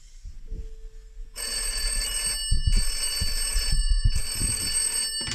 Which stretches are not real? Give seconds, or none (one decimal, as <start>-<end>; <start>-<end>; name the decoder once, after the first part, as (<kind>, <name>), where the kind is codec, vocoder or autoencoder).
1.2-2.0 (vocoder, Vocos); 3.5-4.2

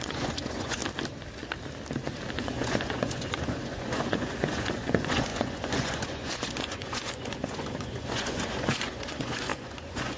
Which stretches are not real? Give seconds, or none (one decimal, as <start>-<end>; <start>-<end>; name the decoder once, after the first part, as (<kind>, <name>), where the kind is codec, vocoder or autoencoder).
0.0-0.8 (vocoder, Vocos); 2.3-10.2